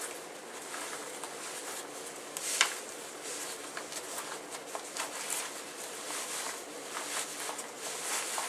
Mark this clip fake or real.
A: real